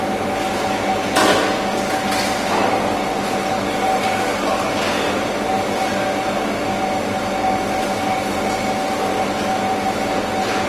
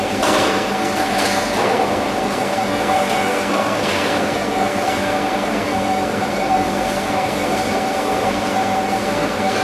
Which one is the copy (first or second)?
second